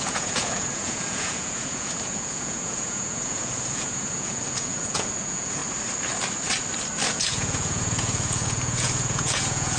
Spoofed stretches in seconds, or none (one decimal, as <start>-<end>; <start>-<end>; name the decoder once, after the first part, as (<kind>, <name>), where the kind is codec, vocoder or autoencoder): 0.0-5.6 (vocoder, Vocos); 7.1-9.8